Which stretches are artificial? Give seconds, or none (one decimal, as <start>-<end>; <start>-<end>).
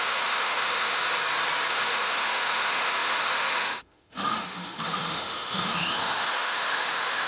0.0-1.0; 1.7-7.3